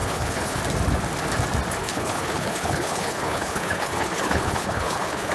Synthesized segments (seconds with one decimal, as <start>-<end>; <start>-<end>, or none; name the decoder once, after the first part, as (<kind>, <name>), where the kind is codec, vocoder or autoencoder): 0.0-0.6 (codec, HILCodec); 1.8-5.3